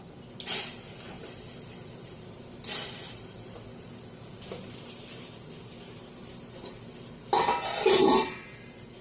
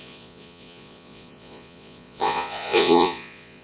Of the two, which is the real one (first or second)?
first